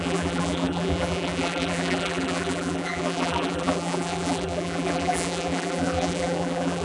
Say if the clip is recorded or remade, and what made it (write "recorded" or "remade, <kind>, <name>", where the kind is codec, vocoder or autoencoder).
remade, vocoder, BigVGAN v2